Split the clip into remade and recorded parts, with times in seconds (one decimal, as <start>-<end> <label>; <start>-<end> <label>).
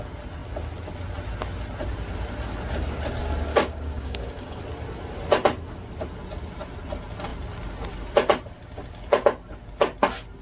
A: 0.0-3.5 recorded; 3.5-4.6 remade; 4.6-10.4 recorded